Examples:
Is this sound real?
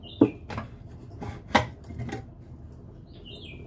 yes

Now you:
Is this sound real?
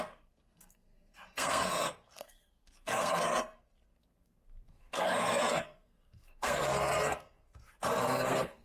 no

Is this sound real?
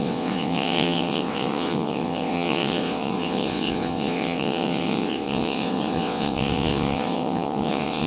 no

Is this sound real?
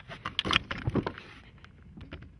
yes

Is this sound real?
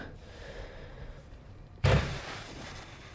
no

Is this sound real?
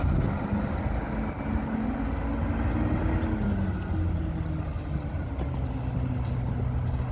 yes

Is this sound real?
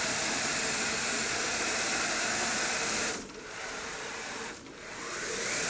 no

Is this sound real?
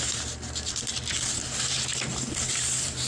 yes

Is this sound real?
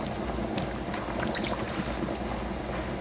yes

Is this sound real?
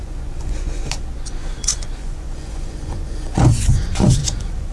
no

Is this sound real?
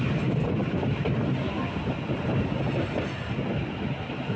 yes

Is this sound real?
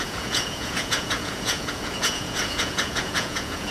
no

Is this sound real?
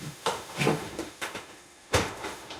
no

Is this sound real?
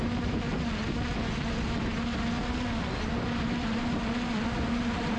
yes